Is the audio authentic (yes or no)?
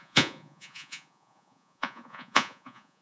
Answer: no